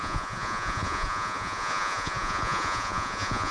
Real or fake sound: fake